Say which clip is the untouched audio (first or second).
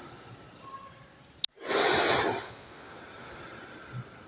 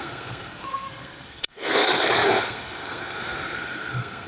first